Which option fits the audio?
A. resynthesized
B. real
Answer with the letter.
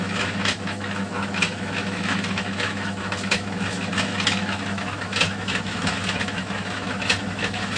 A